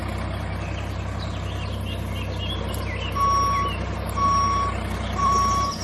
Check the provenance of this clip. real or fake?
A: real